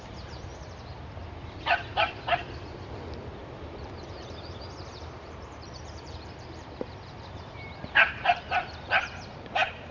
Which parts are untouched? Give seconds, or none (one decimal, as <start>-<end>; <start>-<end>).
0.5-3.5